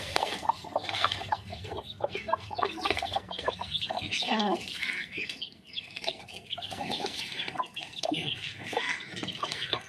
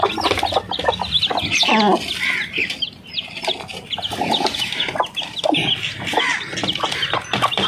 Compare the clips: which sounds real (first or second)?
second